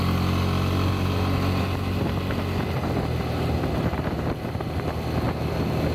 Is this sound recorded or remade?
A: recorded